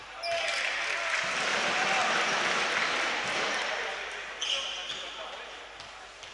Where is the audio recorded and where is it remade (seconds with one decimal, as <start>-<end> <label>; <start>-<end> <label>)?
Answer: 0.0-0.9 recorded; 0.9-6.3 remade